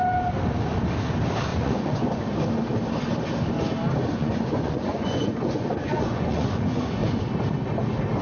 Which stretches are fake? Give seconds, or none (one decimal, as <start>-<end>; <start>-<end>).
1.5-2.2; 4.1-7.2